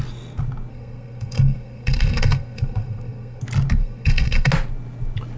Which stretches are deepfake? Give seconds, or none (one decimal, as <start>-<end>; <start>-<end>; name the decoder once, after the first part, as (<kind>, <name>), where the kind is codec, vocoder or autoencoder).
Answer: 0.7-3.4 (codec, SNAC); 3.8-4.5